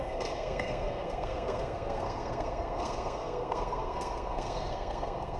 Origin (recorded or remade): remade